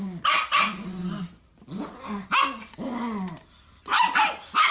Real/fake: real